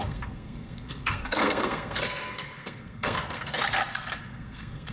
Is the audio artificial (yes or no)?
yes